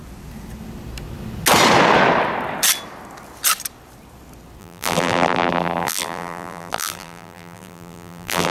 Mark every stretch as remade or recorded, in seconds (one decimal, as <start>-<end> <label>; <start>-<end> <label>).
0.0-4.6 recorded; 4.6-8.5 remade